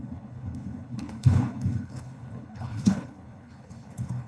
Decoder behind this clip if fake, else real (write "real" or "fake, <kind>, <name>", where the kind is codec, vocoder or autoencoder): fake, codec, HILCodec